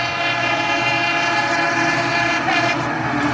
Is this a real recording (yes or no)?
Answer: yes